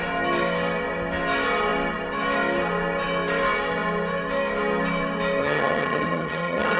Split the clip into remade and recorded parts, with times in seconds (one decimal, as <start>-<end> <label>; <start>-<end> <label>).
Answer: 0.0-5.4 recorded; 5.4-6.8 remade